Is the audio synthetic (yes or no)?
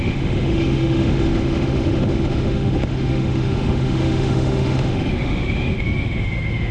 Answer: yes